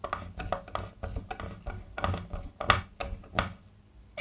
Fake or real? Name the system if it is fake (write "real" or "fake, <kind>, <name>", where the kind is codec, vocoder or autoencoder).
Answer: real